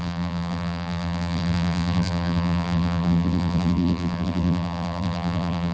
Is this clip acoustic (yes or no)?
no